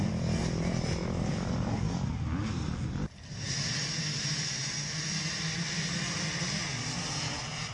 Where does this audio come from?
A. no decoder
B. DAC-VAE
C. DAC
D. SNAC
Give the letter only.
A